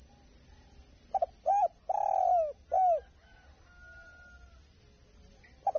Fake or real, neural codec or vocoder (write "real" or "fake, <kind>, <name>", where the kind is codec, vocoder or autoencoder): real